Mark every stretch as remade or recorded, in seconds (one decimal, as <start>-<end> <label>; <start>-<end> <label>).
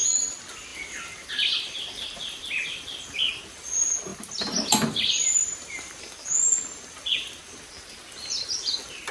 0.0-4.1 recorded; 4.1-5.7 remade; 5.7-9.1 recorded